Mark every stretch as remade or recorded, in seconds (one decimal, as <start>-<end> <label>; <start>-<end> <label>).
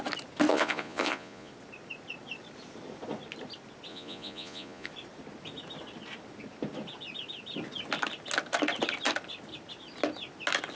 0.0-0.5 recorded; 0.5-1.5 remade; 1.5-3.9 recorded; 3.9-4.9 remade; 4.9-10.8 recorded